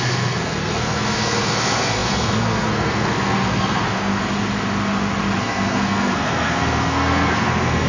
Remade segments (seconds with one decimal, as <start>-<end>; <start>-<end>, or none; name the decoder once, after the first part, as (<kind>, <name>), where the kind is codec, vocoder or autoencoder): 0.0-4.1 (codec, SNAC); 5.4-7.9